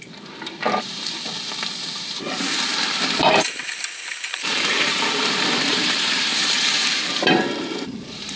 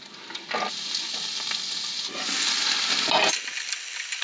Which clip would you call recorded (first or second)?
second